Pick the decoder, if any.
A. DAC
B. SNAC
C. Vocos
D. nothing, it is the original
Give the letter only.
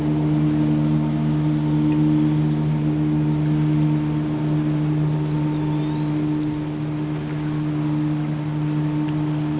D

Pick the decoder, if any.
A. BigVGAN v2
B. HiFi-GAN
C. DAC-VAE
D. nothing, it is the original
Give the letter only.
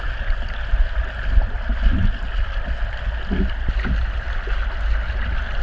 D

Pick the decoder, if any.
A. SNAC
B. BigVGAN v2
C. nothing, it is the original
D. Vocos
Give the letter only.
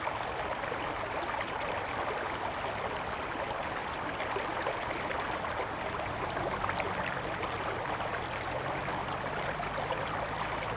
C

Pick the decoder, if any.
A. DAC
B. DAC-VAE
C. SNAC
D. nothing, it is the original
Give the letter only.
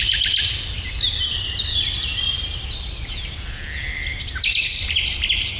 D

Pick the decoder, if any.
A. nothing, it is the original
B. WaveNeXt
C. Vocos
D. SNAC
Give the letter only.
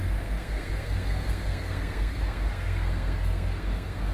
D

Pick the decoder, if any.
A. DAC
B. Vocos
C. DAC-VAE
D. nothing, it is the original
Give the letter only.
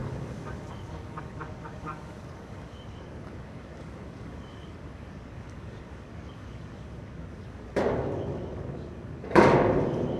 A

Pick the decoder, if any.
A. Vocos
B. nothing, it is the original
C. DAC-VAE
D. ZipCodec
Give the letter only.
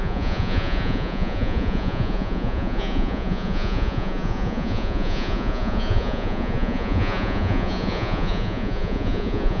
A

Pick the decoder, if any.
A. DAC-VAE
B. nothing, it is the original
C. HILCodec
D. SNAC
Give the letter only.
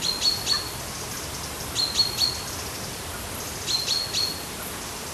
B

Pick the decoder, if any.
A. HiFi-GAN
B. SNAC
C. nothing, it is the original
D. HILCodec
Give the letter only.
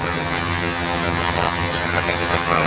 A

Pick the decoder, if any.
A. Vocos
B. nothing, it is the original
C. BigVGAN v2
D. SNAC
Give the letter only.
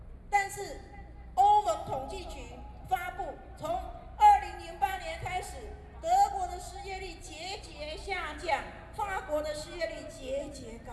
B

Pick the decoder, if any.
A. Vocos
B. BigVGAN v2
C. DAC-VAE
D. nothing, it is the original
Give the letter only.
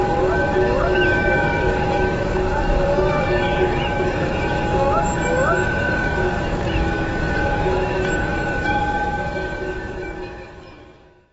C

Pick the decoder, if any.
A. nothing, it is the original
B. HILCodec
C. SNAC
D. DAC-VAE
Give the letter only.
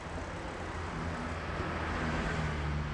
A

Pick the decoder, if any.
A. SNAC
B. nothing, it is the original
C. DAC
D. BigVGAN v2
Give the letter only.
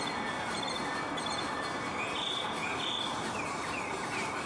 D